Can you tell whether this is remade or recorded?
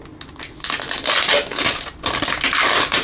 recorded